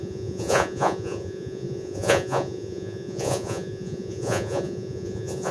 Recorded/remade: remade